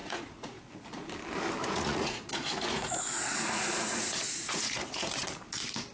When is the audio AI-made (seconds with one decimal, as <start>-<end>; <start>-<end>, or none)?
0.0-0.6; 1.6-5.1